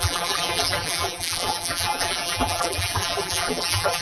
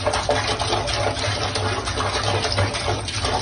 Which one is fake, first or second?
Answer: first